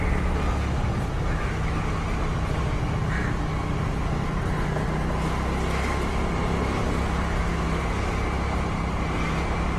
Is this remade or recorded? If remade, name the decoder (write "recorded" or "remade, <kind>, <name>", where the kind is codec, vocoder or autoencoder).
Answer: recorded